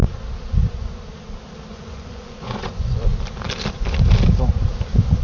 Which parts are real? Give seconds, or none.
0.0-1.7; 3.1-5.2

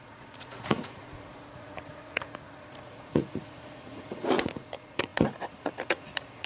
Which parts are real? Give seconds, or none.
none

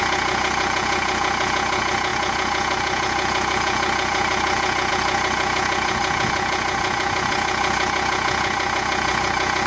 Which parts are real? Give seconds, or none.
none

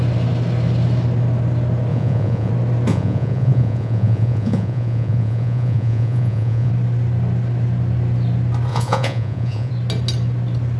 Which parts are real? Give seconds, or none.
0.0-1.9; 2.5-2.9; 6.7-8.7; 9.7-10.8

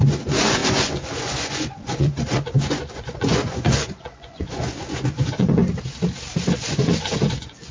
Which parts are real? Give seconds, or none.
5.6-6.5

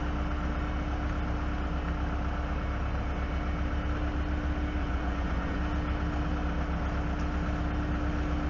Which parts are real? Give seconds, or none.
0.0-4.8; 5.6-8.5

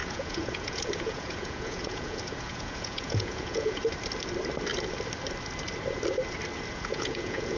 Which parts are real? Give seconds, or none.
3.8-6.7

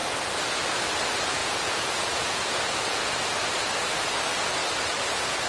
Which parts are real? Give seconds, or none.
0.0-1.4; 3.2-5.5